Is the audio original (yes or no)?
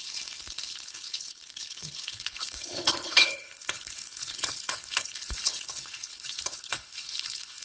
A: no